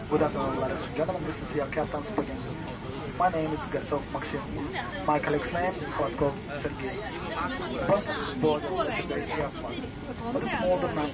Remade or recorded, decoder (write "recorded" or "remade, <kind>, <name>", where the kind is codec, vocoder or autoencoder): recorded